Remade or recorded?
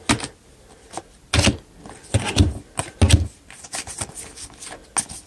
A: recorded